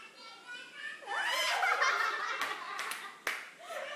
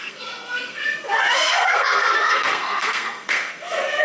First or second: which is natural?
first